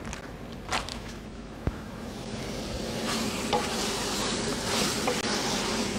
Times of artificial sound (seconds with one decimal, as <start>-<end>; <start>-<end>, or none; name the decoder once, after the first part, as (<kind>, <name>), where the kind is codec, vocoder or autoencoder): 0.9-2.4 (autoencoder, DAC-VAE)